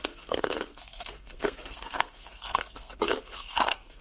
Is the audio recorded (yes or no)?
no